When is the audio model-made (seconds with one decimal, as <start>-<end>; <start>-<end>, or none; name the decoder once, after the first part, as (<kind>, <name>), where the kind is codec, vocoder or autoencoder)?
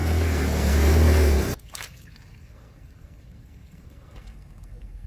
0.0-5.1 (codec, SNAC)